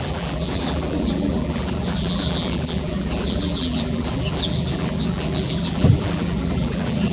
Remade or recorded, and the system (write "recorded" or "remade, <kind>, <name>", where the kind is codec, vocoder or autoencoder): remade, vocoder, BigVGAN v2